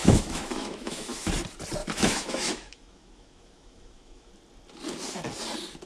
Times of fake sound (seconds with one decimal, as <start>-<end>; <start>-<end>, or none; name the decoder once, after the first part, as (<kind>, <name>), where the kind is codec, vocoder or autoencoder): 0.0-1.3 (autoencoder, DAC-VAE); 1.8-4.3